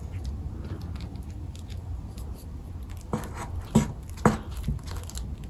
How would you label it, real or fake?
real